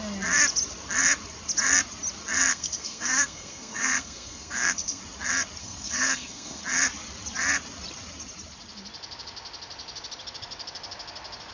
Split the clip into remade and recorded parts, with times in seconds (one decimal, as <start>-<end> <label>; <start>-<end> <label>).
0.0-2.5 recorded; 2.5-5.0 remade; 5.0-5.6 recorded; 5.6-6.6 remade; 6.6-11.5 recorded